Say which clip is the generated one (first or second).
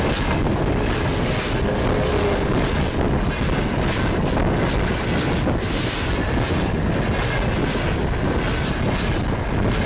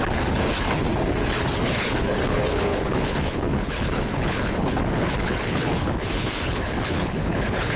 second